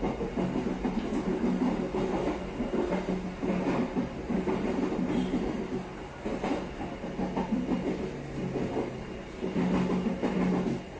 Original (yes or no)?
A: yes